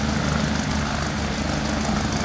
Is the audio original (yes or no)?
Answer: yes